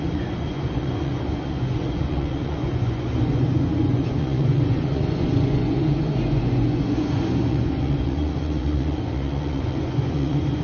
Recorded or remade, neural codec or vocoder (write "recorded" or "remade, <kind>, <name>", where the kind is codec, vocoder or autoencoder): remade, vocoder, Vocos